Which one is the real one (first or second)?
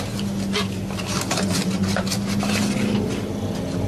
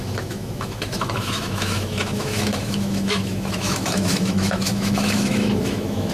first